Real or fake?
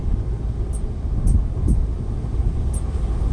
real